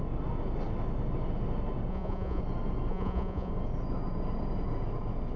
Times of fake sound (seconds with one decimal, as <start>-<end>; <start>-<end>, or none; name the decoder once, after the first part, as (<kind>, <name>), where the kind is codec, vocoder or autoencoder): 1.9-2.4 (vocoder, Vocos); 2.9-3.5